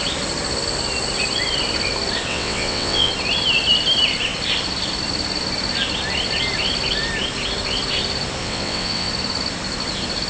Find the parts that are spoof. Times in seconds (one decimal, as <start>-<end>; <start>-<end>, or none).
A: 2.3-3.1; 8.4-9.1